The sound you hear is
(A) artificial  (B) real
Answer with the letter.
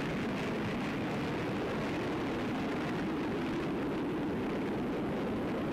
B